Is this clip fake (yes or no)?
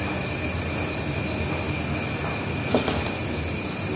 no